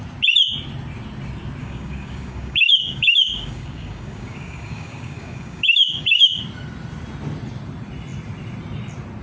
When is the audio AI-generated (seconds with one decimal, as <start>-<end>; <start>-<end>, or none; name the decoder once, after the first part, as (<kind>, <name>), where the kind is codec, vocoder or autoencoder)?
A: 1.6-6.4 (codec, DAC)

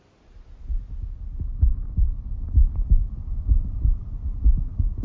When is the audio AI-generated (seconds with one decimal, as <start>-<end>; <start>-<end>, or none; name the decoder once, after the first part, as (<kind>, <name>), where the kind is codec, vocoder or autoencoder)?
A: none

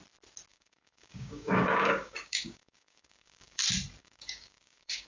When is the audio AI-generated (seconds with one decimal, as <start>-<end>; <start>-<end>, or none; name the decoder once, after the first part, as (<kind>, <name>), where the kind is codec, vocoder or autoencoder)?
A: 0.5-3.6 (codec, DAC); 4.0-5.1